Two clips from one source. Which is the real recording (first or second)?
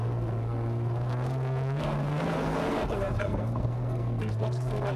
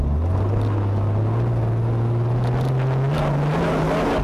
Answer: second